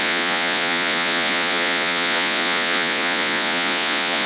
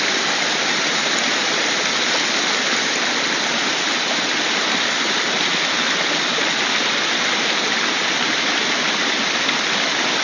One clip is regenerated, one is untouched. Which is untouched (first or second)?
second